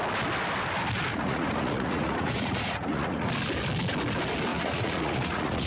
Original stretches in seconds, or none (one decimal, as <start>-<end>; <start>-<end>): 0.0-1.1; 3.3-4.5